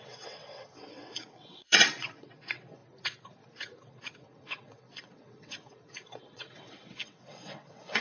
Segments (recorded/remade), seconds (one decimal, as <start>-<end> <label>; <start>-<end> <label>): 0.0-2.8 remade; 2.8-3.9 recorded; 3.9-8.0 remade